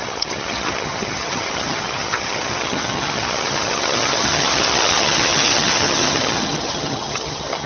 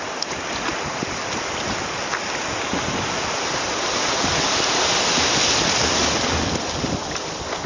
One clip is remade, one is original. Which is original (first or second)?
second